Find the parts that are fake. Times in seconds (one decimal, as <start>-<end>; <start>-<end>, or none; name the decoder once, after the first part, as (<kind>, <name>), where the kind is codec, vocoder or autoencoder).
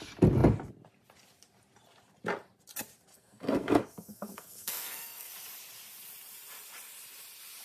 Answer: 3.1-5.3 (codec, SNAC)